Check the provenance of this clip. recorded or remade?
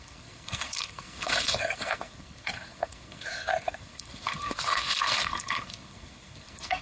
remade